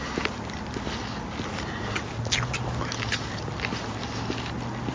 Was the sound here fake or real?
real